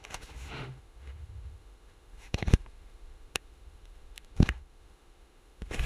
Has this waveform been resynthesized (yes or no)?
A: yes